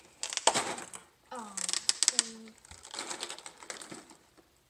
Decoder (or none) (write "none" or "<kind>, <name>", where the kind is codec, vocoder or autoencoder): none